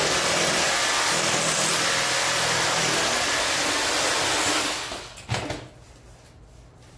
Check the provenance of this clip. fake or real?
real